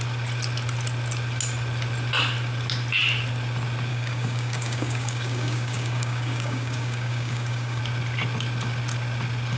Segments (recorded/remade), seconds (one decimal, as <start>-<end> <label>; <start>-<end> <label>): 0.0-3.9 recorded; 3.9-7.8 remade; 7.8-9.6 recorded